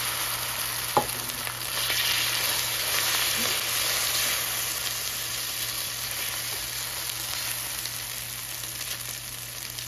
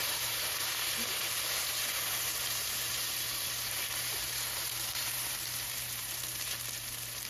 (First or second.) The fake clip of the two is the second